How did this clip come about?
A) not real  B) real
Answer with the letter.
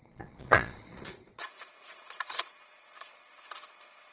A